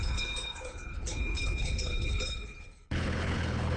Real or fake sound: fake